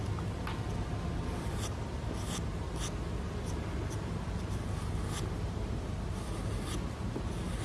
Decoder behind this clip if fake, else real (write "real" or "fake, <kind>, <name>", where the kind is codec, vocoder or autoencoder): real